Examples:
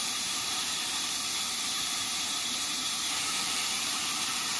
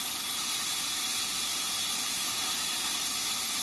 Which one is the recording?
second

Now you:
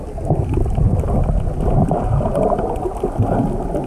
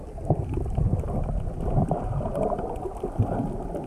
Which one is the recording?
first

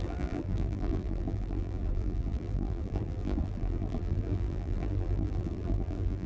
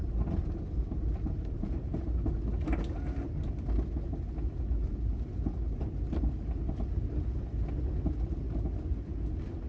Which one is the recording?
second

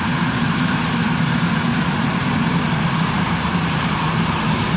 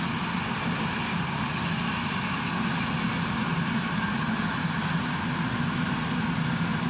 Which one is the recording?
second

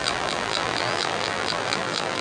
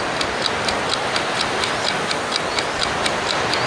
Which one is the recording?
second